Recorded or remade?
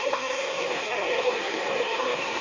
remade